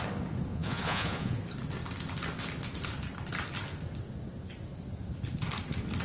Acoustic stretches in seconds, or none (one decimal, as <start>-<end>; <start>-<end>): 0.0-0.5; 1.4-6.0

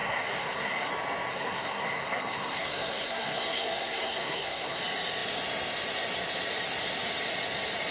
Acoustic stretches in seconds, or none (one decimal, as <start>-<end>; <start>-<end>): 0.9-1.3; 4.8-7.9

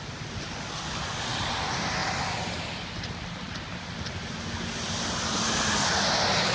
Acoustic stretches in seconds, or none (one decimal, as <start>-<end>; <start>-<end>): 0.0-6.5

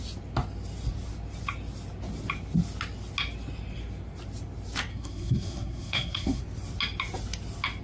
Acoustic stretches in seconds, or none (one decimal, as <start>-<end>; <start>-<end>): 0.0-4.9; 6.4-7.8

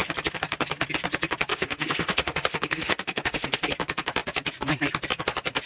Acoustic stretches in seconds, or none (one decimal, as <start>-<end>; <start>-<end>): 0.0-1.5; 3.7-5.7

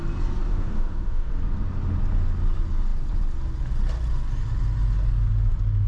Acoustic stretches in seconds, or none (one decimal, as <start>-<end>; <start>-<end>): 0.0-0.5; 1.3-5.9

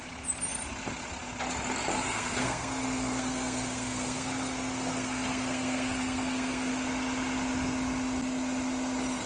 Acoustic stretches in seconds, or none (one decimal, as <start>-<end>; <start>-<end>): 0.0-1.9; 6.7-9.3

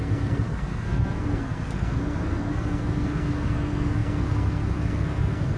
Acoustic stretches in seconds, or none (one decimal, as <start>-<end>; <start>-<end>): none